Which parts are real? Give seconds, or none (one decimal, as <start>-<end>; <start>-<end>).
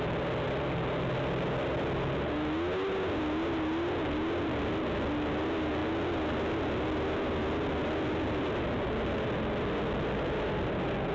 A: 0.0-11.1